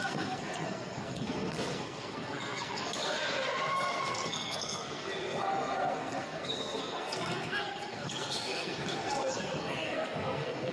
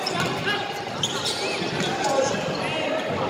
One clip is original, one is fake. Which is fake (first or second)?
first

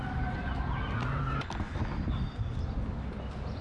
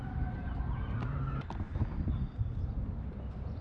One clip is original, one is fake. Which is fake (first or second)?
second